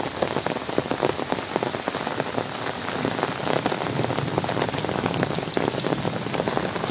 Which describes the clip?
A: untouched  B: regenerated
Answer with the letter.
A